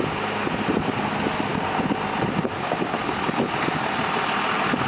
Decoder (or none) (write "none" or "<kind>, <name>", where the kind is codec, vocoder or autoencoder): none